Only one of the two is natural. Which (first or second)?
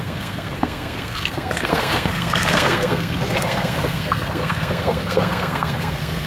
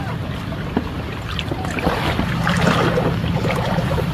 second